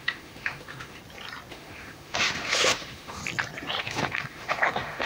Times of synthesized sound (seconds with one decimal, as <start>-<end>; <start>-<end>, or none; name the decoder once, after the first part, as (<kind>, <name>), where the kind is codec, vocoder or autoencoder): 0.0-1.0 (autoencoder, DAC-VAE); 1.5-3.2; 3.8-5.1